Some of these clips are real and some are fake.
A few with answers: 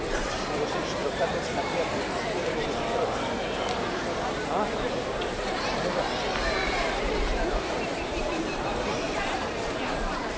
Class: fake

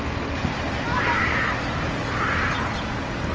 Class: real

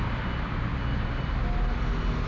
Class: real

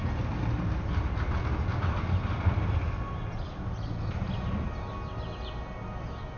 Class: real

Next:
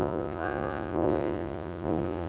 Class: fake